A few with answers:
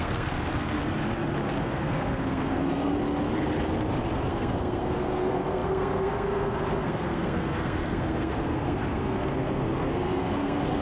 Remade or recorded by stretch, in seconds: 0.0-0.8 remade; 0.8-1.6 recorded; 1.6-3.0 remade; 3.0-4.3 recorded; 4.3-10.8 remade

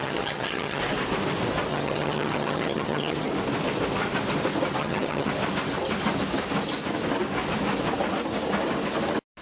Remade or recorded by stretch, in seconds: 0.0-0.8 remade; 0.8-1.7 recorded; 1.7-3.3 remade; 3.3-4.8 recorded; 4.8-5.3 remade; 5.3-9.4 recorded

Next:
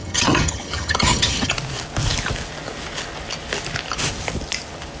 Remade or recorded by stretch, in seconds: 0.0-1.5 remade; 1.5-5.0 recorded

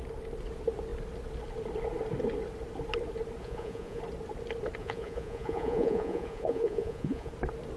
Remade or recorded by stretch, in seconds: 0.0-3.4 recorded; 3.4-4.0 remade; 4.0-4.8 recorded; 4.8-7.3 remade; 7.3-7.8 recorded